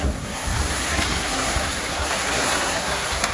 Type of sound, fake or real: fake